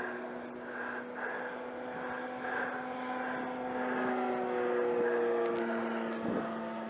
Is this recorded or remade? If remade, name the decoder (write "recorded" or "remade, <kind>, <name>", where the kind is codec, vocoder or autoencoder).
recorded